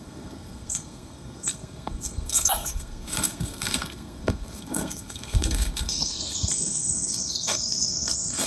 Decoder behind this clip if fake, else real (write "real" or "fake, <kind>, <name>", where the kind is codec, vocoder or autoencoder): fake, codec, SNAC